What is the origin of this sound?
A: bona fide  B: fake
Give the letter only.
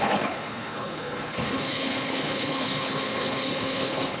B